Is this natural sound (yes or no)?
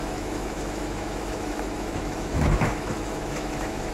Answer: no